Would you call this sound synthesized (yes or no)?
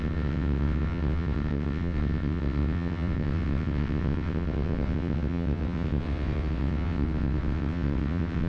yes